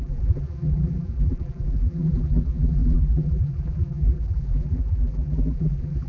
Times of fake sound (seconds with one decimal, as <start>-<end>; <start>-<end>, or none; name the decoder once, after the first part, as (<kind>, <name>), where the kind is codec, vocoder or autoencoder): 0.0-6.1 (vocoder, BigVGAN v2)

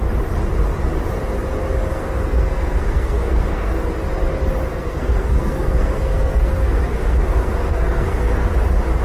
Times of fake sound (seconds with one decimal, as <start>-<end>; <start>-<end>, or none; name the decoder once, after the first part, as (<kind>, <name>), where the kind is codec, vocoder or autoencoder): 1.9-3.9 (codec, SNAC); 4.7-8.5

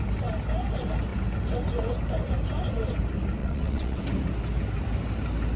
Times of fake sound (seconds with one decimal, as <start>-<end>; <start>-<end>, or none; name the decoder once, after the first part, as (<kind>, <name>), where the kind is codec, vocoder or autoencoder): 3.4-4.0 (vocoder, WaveNeXt)

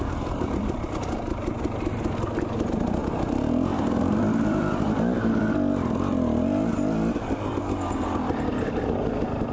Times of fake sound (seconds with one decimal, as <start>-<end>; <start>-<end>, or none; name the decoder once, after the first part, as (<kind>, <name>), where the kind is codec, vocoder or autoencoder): none